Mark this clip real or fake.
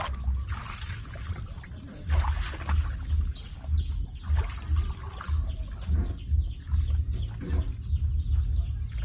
real